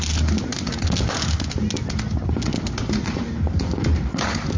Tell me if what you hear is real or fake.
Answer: real